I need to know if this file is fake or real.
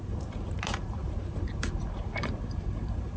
fake